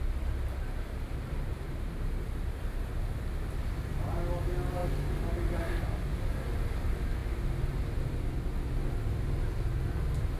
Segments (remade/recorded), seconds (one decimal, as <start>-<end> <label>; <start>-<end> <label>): 0.0-1.5 recorded; 1.5-2.6 remade; 2.6-10.4 recorded